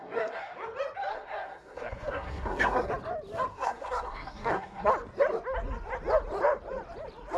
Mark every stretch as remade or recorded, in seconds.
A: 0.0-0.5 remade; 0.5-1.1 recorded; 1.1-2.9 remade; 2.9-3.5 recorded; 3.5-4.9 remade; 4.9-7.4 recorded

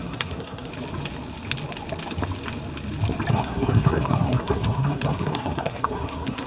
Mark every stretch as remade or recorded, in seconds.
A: 0.0-0.7 remade; 0.7-3.3 recorded; 3.3-6.5 remade

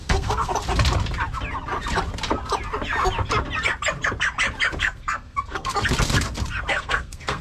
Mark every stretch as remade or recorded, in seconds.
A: 0.0-0.5 remade; 0.5-4.8 recorded; 4.8-5.7 remade; 5.7-6.7 recorded; 6.7-7.4 remade

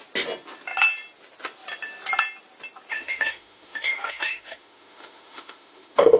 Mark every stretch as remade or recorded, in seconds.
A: 0.0-2.9 recorded; 2.9-6.2 remade

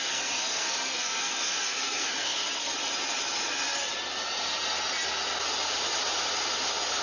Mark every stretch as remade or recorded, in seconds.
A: 0.0-2.7 remade; 2.7-7.0 recorded

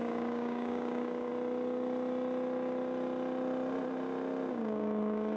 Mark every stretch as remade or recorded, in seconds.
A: 0.0-1.3 remade; 1.3-4.5 recorded; 4.5-5.4 remade

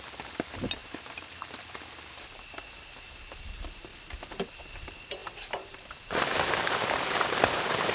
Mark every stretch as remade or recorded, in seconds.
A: 0.0-3.9 remade; 3.9-4.7 recorded; 4.7-7.9 remade

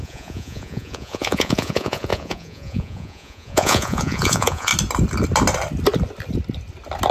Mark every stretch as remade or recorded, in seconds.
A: 0.0-4.7 remade; 4.7-7.1 recorded